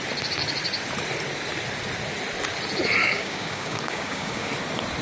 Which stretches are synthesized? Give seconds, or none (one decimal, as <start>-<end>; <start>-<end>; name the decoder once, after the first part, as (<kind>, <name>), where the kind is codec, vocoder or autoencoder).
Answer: 3.0-4.5 (codec, DAC)